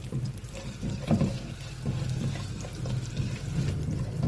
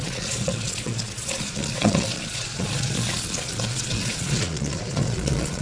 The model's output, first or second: second